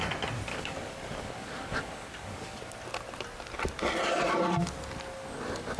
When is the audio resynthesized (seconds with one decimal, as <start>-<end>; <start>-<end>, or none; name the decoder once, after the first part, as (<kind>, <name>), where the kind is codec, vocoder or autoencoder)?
0.5-2.6 (codec, DAC)